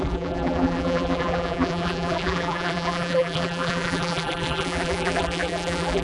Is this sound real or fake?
fake